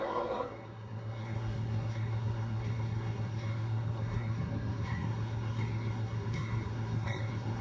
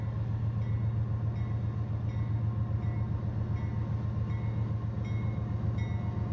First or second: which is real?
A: second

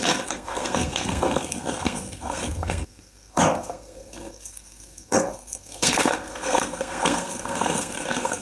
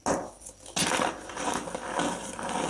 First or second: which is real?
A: second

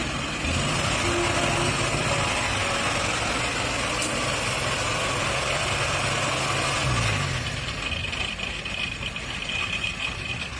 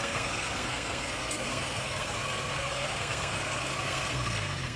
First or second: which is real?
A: first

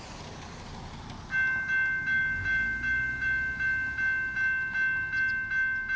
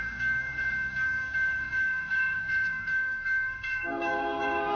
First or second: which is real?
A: first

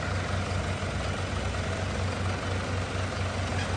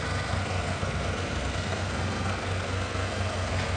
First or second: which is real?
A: first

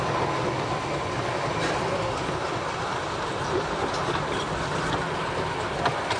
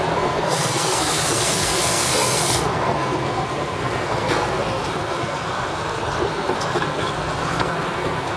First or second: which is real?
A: first